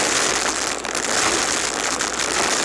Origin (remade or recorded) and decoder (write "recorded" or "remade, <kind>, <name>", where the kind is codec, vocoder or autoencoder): recorded